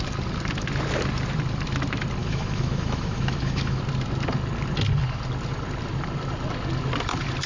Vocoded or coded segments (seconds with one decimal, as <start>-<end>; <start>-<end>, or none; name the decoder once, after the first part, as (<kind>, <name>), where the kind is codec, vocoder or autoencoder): 2.2-3.8 (autoencoder, DAC-VAE)